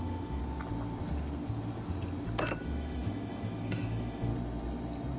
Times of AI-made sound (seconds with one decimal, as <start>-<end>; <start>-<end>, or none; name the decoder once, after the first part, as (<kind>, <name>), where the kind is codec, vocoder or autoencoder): 0.0-0.4 (autoencoder, DAC-VAE); 2.6-4.3